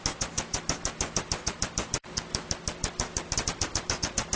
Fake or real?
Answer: real